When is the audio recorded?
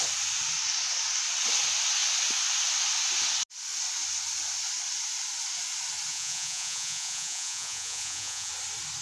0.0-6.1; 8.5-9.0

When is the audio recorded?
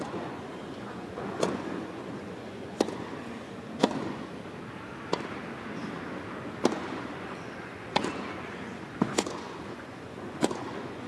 4.3-6.7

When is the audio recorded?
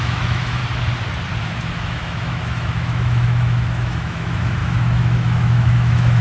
0.6-1.4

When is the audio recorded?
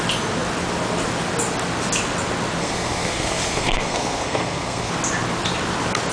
0.0-2.6; 4.9-6.1